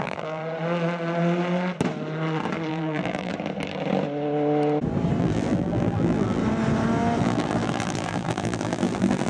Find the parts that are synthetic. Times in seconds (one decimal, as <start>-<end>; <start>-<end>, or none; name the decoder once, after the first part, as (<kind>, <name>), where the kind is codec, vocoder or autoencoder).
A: 0.0-0.4 (vocoder, BigVGAN v2); 2.7-3.3; 5.2-6.4; 7.2-9.3

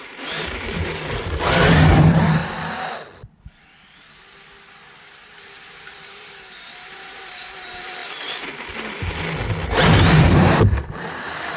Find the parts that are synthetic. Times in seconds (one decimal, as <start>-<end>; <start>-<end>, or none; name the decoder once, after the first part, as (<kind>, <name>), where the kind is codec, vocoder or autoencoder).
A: 0.0-2.4 (vocoder, BigVGAN v2); 5.4-8.0; 9.6-11.6

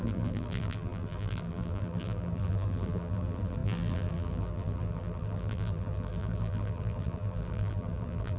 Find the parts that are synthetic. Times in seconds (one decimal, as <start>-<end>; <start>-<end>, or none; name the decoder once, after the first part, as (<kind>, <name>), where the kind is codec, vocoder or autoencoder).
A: 0.0-8.4 (vocoder, BigVGAN v2)

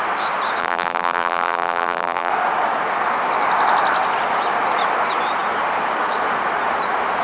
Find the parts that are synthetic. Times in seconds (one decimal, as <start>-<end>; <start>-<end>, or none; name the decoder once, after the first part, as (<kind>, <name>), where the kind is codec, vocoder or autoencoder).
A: 0.6-2.3 (vocoder, BigVGAN v2)

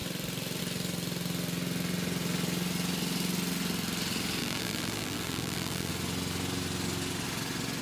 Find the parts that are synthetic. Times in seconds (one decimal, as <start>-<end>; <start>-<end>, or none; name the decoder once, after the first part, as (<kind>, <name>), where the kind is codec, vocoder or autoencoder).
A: 4.4-5.9 (vocoder, BigVGAN v2)

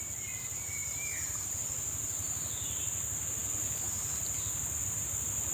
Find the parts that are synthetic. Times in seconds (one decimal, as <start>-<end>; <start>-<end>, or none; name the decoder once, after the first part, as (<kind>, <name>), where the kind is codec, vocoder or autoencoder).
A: 0.8-1.6 (vocoder, BigVGAN v2)

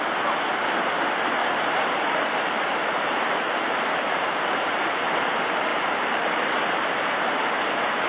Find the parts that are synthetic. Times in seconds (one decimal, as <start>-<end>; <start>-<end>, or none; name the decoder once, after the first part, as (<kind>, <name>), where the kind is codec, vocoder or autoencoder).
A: 1.4-5.1 (vocoder, BigVGAN v2); 5.7-7.3